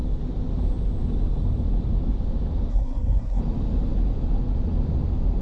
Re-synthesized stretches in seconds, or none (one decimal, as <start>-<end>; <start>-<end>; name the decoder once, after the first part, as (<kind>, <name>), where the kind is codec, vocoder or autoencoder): 2.7-3.4 (codec, SNAC)